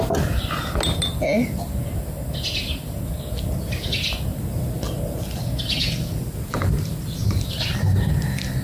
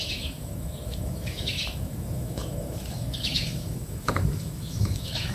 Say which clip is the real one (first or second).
first